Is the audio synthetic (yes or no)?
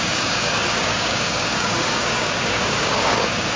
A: yes